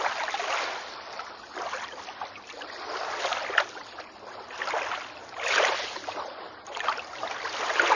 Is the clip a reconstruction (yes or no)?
no